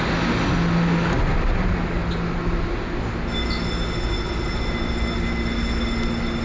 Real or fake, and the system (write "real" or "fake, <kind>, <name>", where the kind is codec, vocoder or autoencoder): real